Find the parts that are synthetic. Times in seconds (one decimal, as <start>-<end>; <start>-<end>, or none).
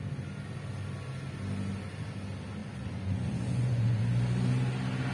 2.6-4.0